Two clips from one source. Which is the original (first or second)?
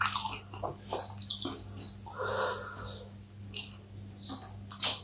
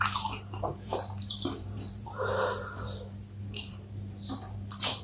first